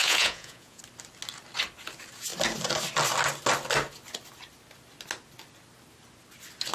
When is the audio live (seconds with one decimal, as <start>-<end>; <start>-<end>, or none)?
0.8-6.7